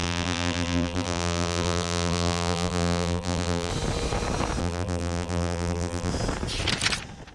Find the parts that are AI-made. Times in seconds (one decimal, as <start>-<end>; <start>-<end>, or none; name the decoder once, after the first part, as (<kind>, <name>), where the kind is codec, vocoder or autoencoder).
0.0-3.7 (vocoder, BigVGAN v2); 4.6-6.1